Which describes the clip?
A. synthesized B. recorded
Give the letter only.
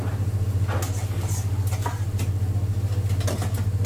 B